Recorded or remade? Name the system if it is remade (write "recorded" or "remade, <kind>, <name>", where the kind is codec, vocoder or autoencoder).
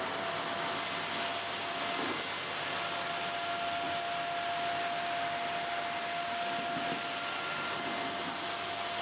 recorded